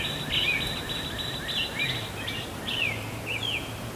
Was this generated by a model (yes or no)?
no